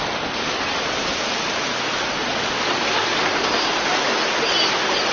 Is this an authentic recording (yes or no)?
no